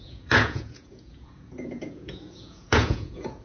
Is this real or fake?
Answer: fake